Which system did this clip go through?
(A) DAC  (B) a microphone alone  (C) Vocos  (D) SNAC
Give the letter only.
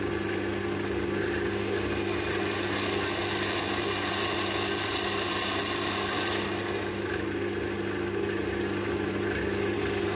B